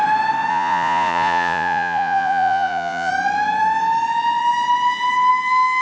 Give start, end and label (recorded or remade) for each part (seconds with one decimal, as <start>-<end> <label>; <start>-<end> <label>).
0.0-0.5 recorded; 0.5-3.1 remade; 3.1-5.8 recorded